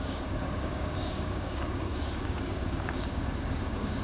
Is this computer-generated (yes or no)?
yes